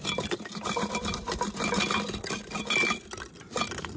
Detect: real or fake real